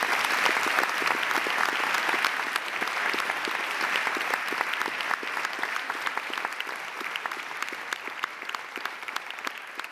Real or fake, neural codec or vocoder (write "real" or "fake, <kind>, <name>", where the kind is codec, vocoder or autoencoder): real